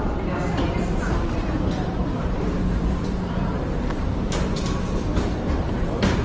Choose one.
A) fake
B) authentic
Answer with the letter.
A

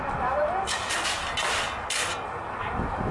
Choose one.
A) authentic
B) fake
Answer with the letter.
A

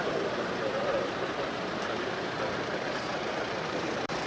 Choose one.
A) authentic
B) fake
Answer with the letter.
B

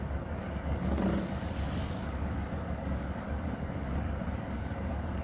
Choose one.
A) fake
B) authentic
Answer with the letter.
A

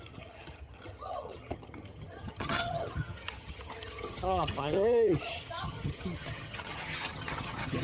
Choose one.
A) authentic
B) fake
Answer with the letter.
B